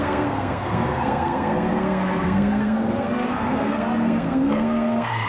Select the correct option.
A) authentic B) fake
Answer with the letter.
B